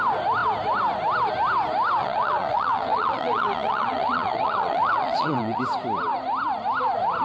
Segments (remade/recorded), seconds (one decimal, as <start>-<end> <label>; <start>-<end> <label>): 0.0-2.0 recorded; 2.0-5.6 remade; 5.6-7.2 recorded